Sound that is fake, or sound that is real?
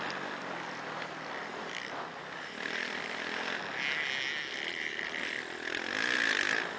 real